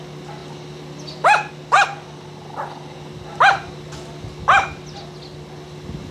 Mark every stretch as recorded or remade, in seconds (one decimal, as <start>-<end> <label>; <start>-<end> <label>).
0.0-6.1 recorded